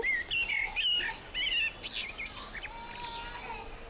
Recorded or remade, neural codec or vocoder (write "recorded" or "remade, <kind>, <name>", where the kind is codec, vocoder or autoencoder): recorded